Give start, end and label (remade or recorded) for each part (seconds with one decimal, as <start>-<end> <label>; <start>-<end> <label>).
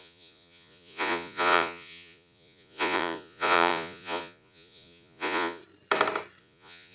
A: 0.0-5.6 remade; 5.6-6.4 recorded; 6.4-6.9 remade